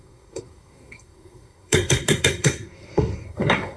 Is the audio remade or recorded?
remade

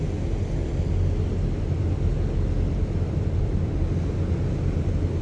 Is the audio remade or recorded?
recorded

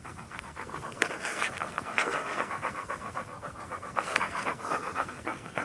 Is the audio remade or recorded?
remade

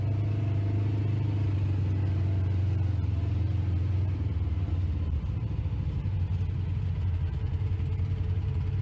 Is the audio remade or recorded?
recorded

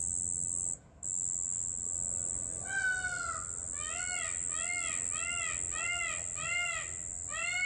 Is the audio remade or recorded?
recorded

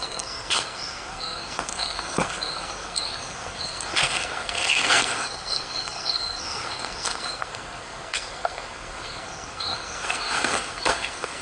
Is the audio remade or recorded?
remade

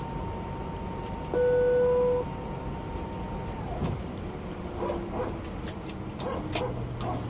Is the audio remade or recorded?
recorded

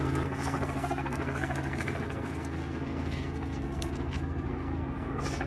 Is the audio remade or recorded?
remade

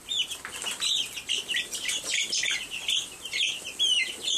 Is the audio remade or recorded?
recorded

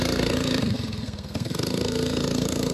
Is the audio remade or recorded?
remade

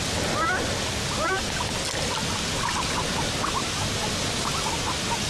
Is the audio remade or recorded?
recorded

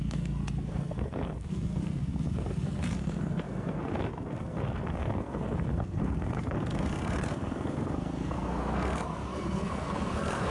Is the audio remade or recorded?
remade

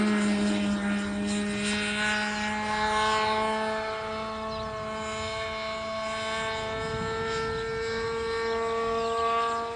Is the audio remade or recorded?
recorded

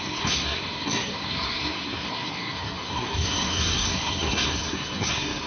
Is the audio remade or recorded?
remade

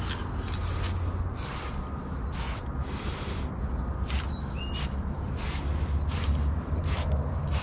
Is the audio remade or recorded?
recorded